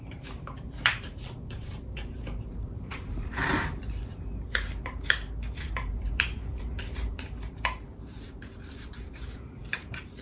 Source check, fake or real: fake